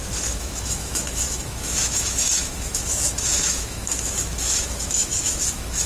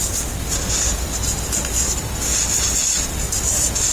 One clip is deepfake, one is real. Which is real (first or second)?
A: second